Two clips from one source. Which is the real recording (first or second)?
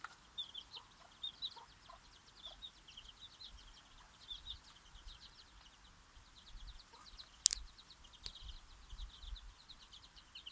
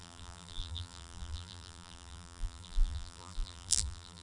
first